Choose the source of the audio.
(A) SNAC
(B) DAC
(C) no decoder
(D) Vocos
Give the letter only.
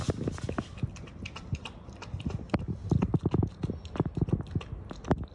C